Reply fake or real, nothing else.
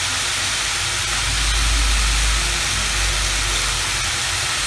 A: real